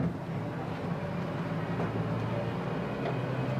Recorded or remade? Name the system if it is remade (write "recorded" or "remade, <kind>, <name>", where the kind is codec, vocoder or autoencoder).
recorded